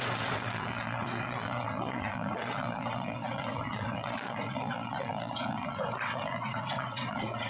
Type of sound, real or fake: fake